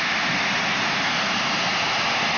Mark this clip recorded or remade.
recorded